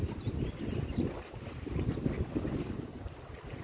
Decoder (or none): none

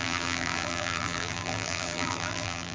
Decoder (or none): vocoder, BigVGAN v2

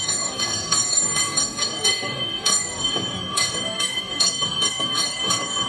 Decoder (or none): codec, DAC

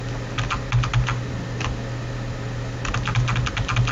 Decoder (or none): none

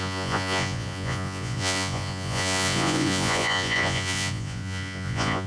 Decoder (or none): vocoder, Vocos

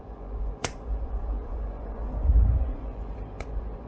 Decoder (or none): vocoder, Vocos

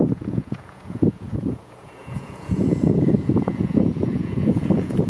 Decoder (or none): vocoder, Vocos